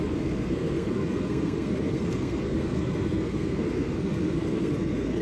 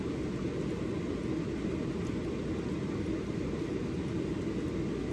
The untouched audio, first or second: second